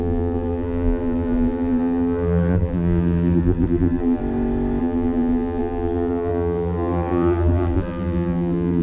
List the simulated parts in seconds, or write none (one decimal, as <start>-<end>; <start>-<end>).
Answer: 0.0-4.2; 4.8-8.8